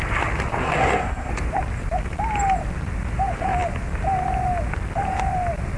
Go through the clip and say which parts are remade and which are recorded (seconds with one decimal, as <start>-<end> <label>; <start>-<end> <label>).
0.0-0.6 recorded; 0.6-1.3 remade; 1.3-5.8 recorded